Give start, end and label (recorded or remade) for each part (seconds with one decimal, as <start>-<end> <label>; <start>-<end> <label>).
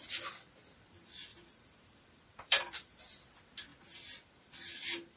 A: 0.0-1.3 recorded; 1.3-3.0 remade; 3.0-5.2 recorded